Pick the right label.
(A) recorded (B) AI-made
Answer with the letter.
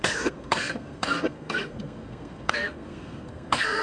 B